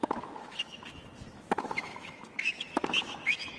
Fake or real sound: fake